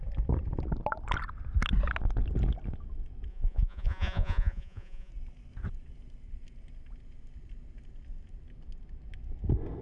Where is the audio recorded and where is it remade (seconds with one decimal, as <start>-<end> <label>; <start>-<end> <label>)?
0.0-3.3 recorded; 3.3-5.1 remade; 5.1-9.8 recorded